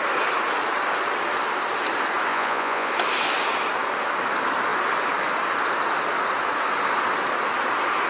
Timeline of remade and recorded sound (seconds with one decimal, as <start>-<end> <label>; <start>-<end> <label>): 0.0-2.3 recorded; 2.3-2.9 remade; 2.9-8.1 recorded